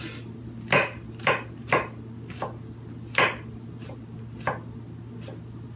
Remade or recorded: recorded